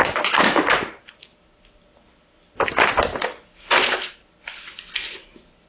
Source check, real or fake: real